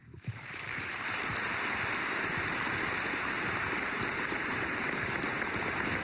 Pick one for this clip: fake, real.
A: fake